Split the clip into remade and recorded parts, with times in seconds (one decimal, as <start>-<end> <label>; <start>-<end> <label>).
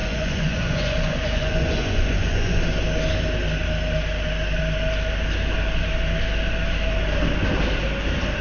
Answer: 0.0-2.6 remade; 2.6-8.4 recorded